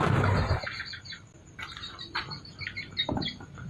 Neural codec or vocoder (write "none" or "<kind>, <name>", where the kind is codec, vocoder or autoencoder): none